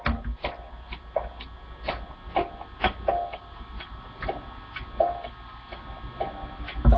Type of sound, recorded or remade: recorded